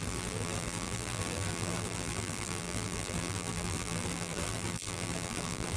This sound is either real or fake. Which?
fake